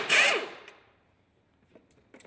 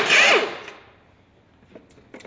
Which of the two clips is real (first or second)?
second